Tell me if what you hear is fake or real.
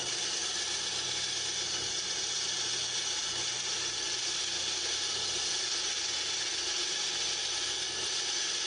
fake